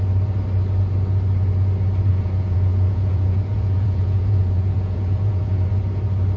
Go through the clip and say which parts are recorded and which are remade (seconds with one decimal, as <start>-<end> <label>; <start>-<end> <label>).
0.0-2.1 recorded; 2.1-5.7 remade; 5.7-6.4 recorded